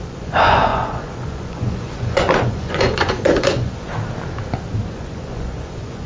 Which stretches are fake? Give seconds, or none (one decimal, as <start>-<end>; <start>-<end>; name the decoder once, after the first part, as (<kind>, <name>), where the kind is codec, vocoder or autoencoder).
0.0-3.9 (vocoder, Vocos); 4.9-6.1